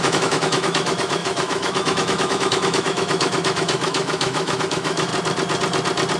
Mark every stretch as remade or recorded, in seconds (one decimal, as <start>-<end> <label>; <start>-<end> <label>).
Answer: 0.0-5.1 remade; 5.1-6.2 recorded